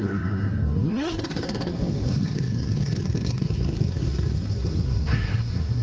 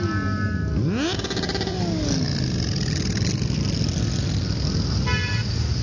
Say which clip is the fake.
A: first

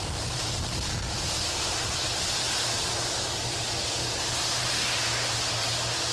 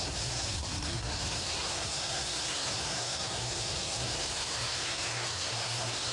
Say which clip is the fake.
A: second